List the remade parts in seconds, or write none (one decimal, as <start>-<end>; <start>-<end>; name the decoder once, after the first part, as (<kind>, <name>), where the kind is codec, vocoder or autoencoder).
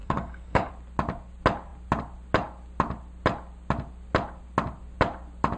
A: 0.0-0.7 (codec, DAC)